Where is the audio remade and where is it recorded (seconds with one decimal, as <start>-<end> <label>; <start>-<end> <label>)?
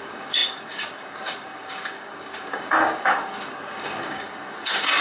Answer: 0.0-5.0 remade